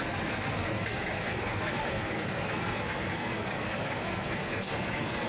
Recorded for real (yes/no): no